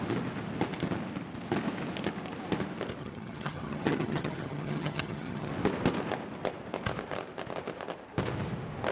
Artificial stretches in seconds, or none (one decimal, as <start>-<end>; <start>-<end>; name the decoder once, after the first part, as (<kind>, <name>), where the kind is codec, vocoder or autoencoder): 3.0-5.5 (vocoder, HiFi-GAN)